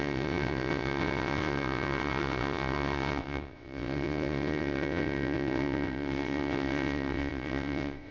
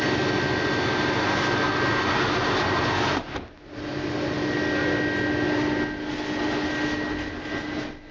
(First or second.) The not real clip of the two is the first